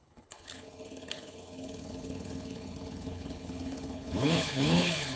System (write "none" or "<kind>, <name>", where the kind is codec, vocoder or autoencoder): codec, HILCodec